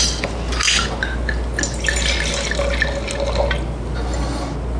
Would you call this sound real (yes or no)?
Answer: yes